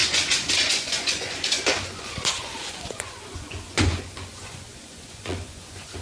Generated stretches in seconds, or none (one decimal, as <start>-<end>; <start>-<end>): 0.0-6.0